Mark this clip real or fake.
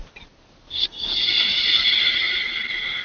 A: real